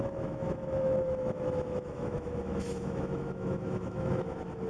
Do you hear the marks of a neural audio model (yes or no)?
yes